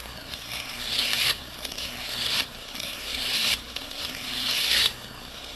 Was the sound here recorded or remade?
remade